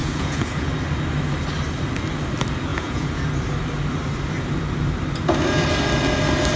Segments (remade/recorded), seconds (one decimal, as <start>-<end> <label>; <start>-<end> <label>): 0.0-0.7 remade; 0.7-2.7 recorded; 2.7-3.2 remade; 3.2-6.6 recorded